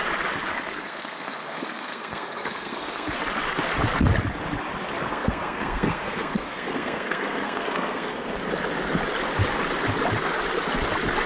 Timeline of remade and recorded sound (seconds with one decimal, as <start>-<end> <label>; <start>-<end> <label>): 0.0-0.5 recorded; 0.5-3.2 remade; 3.2-5.1 recorded; 5.1-8.4 remade; 8.4-11.3 recorded